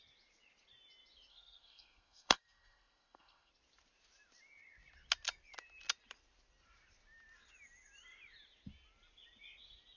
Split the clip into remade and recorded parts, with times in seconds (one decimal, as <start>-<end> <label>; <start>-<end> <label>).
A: 0.0-1.3 recorded; 1.3-3.5 remade; 3.5-10.0 recorded